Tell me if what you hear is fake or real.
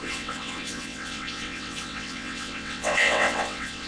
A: fake